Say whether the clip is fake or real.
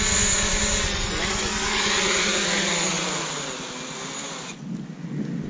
real